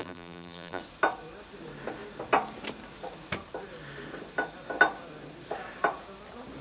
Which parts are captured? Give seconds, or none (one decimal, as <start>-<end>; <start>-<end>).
0.8-6.6